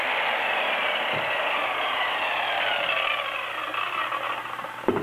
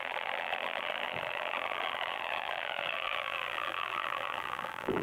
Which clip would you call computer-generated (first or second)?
second